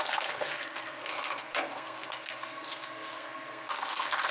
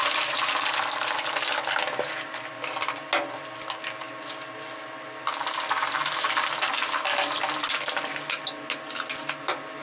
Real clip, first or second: second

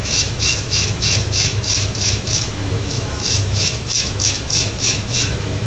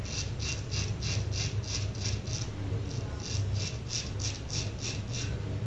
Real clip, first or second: second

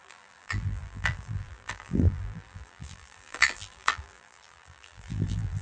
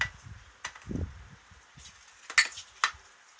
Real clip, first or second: second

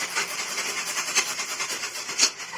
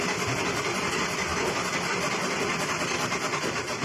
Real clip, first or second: second